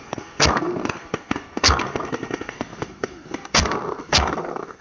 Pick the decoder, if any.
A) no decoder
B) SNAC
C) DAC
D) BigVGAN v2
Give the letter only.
B